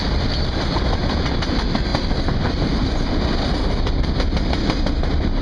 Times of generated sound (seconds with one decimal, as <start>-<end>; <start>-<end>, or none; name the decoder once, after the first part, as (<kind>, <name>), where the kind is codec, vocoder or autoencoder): 1.9-3.2 (vocoder, BigVGAN v2)